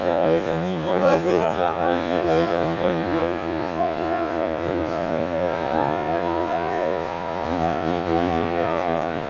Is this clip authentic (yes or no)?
no